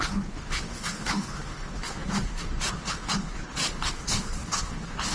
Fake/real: fake